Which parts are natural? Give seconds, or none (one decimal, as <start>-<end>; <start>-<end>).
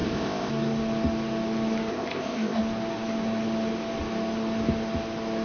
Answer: 0.5-1.9; 2.6-5.4